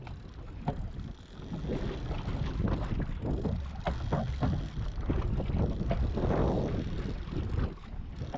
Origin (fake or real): real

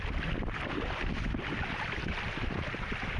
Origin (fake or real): real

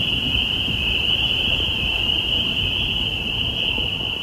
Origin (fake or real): fake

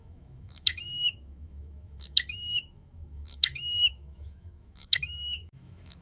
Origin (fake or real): fake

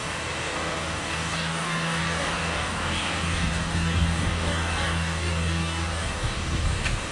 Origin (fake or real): fake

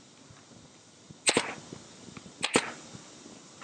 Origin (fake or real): real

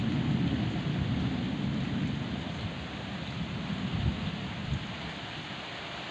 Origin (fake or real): real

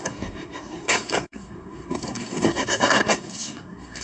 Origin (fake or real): fake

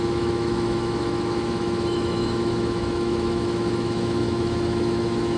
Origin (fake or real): fake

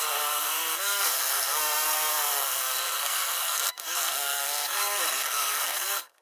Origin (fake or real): fake